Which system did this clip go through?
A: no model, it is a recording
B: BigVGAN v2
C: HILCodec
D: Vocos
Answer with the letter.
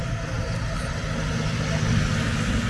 A